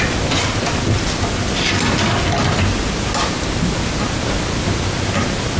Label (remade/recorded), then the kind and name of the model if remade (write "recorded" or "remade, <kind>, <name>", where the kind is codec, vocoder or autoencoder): recorded